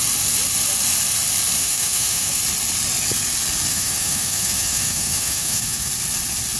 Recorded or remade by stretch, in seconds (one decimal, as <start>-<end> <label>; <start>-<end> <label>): 0.0-1.6 recorded; 1.6-2.4 remade; 2.4-3.7 recorded; 3.7-5.9 remade; 5.9-6.6 recorded